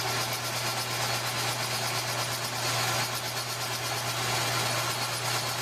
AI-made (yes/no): no